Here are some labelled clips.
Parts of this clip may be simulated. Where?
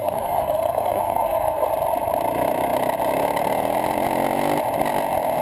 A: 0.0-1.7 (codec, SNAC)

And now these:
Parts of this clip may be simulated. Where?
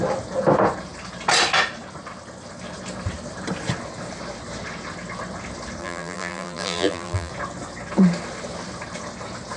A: 5.8-7.3 (vocoder, BigVGAN v2)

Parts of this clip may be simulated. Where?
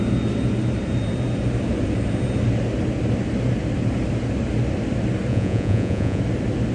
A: 5.3-6.2 (vocoder, Vocos)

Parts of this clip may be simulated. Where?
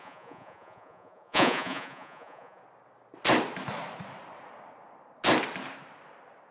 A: 0.0-2.6 (vocoder, Vocos)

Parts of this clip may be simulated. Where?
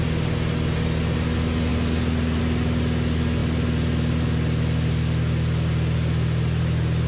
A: none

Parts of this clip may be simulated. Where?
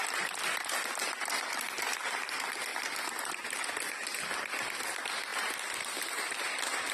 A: 0.0-2.7 (vocoder, BigVGAN v2); 4.5-5.3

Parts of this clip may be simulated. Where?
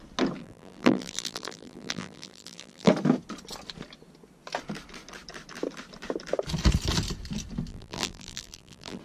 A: 0.4-2.9 (vocoder, BigVGAN v2); 7.7-9.0